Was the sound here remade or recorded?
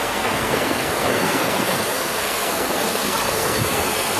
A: remade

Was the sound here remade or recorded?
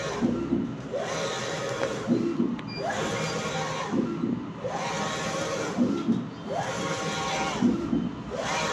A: recorded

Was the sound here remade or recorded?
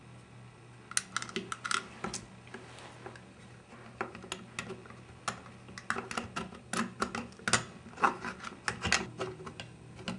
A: recorded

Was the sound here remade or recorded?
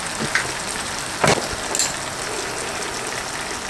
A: recorded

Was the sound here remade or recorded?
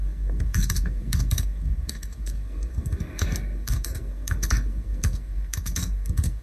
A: remade